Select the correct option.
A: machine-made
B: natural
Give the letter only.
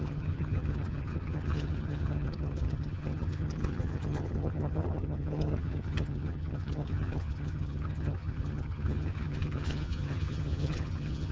A